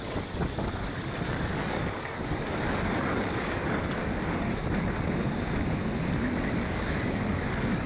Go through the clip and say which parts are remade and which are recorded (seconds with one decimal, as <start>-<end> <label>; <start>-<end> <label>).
0.0-4.6 remade; 4.6-6.7 recorded; 6.7-7.9 remade